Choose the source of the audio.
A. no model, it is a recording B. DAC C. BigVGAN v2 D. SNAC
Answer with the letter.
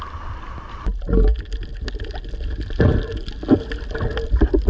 A